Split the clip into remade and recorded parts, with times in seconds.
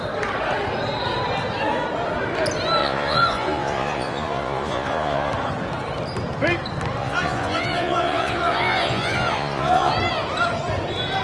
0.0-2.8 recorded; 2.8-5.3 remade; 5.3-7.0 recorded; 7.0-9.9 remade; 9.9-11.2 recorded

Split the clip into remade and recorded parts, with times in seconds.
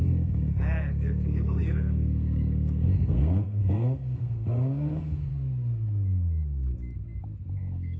0.0-5.3 remade; 5.3-7.5 recorded; 7.5-8.0 remade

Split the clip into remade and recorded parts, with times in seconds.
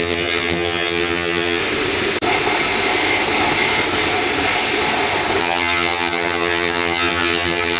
0.0-1.6 remade; 1.6-5.4 recorded; 5.4-7.8 remade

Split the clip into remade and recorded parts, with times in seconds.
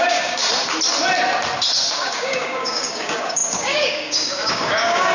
0.0-0.4 remade; 0.4-1.9 recorded; 1.9-5.1 remade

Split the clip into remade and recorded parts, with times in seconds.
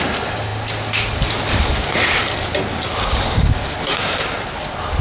0.0-5.0 recorded